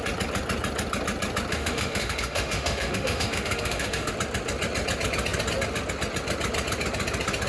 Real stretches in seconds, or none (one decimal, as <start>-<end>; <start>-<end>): 0.0-1.5; 4.1-7.5